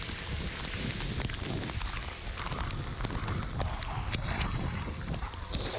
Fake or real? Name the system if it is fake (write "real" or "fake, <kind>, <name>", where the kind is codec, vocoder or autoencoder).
real